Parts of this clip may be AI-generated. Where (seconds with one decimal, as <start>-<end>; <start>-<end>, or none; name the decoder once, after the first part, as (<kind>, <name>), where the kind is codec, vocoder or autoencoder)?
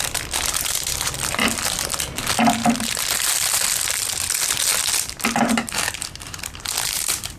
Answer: 2.6-3.8 (vocoder, BigVGAN v2); 4.7-5.9